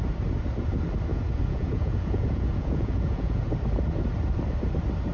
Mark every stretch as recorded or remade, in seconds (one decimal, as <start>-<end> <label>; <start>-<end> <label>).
0.0-1.1 recorded; 1.1-3.5 remade; 3.5-5.1 recorded